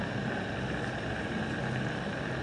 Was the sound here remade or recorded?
recorded